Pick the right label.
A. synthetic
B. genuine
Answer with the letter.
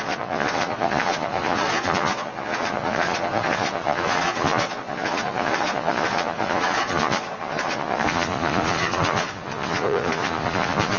A